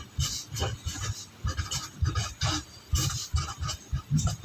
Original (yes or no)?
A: yes